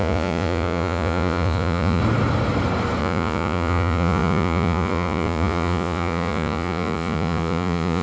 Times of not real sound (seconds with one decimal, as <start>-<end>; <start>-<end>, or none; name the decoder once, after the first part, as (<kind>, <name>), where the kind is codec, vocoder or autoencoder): 0.0-2.0 (vocoder, Vocos); 3.0-8.0